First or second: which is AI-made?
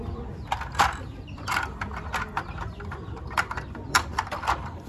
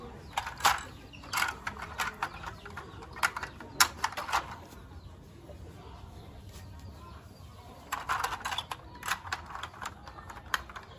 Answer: first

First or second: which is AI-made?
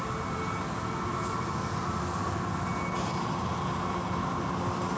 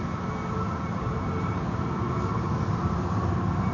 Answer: second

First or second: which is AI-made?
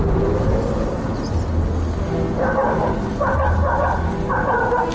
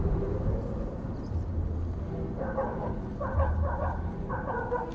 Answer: second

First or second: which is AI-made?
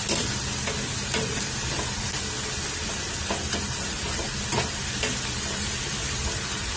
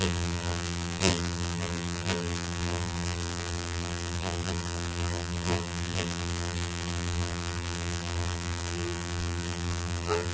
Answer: second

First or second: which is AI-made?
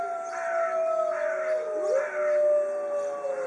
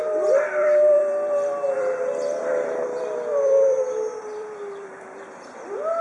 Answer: second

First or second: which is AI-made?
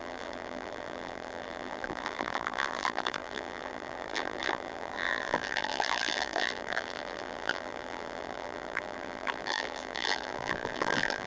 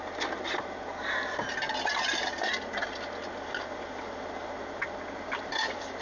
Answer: first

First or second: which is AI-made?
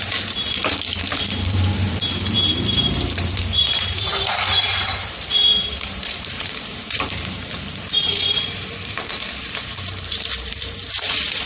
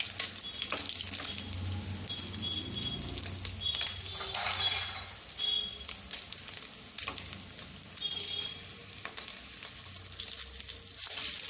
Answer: first